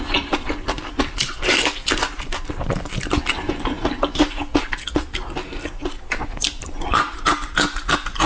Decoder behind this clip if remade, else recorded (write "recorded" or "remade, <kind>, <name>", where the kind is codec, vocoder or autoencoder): recorded